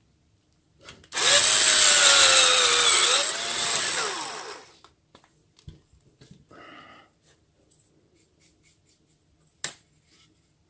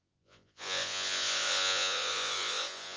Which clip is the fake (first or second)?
second